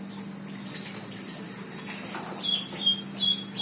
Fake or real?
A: real